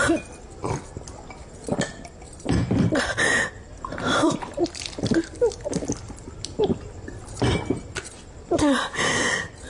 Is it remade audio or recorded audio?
remade